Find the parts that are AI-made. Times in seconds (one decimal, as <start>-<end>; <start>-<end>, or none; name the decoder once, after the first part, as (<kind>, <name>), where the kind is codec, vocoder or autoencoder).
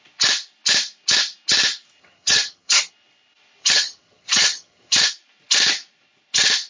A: 2.0-2.9 (vocoder, HiFi-GAN); 3.6-5.1